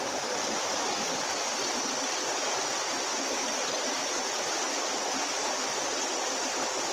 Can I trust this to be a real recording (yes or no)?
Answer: yes